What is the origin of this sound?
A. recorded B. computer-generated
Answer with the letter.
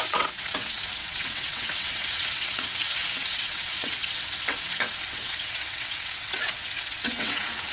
B